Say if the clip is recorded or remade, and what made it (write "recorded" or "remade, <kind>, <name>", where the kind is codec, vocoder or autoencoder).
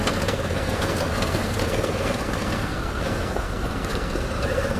remade, codec, SNAC